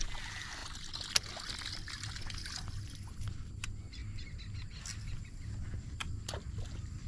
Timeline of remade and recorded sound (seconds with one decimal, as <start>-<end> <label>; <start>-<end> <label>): 0.0-7.1 recorded

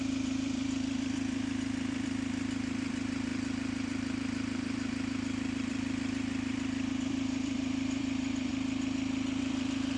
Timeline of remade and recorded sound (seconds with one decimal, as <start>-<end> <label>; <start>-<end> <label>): 0.0-8.5 remade; 8.5-9.4 recorded; 9.4-10.0 remade

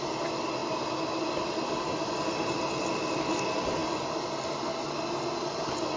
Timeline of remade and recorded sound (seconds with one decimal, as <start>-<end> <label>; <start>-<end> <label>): 0.0-6.0 recorded

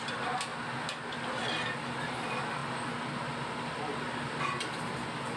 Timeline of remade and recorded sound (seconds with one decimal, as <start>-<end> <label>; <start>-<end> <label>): 0.0-5.4 recorded

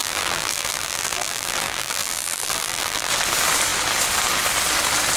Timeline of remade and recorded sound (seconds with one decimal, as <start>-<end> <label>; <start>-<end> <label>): 0.0-3.1 remade; 3.1-5.2 recorded

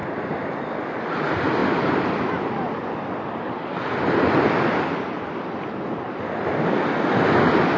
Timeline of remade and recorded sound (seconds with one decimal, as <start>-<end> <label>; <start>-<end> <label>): 0.0-7.8 recorded